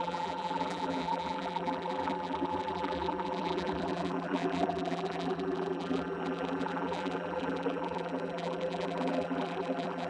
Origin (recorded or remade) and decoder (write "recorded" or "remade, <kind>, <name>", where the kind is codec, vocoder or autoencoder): remade, vocoder, BigVGAN v2